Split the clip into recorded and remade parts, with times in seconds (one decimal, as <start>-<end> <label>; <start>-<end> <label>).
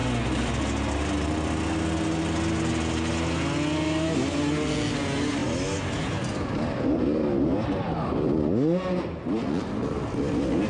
0.0-10.7 recorded